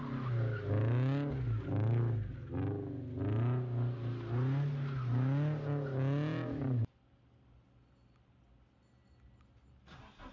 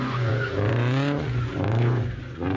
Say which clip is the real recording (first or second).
first